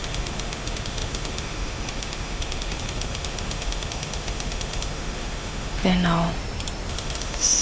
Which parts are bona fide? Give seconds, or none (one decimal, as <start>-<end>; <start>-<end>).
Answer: 5.9-6.9